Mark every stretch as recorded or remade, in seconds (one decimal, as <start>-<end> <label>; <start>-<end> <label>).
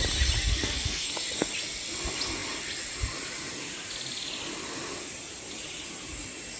0.0-0.4 recorded; 0.4-1.1 remade; 1.1-6.6 recorded